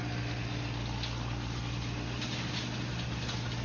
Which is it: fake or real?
real